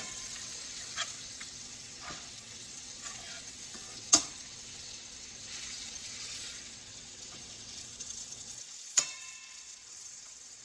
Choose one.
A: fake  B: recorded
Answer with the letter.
A